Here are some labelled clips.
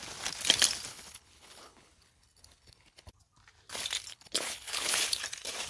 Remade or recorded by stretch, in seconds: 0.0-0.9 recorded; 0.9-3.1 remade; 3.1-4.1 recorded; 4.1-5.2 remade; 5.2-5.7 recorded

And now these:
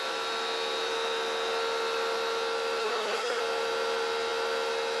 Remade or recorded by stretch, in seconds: 0.0-2.8 recorded; 2.8-3.4 remade; 3.4-5.0 recorded

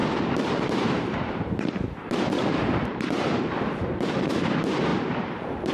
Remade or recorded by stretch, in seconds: 0.0-5.7 remade

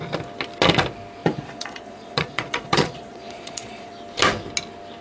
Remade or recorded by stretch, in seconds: 0.0-1.2 recorded; 1.2-3.9 remade; 3.9-5.0 recorded

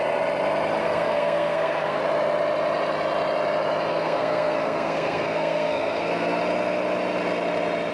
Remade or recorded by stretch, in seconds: 0.0-0.8 recorded; 0.8-2.0 remade; 2.0-3.9 recorded; 3.9-6.4 remade; 6.4-7.9 recorded

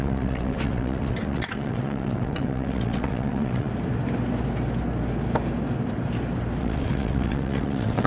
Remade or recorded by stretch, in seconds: 0.0-3.7 remade; 3.7-6.6 recorded; 6.6-8.1 remade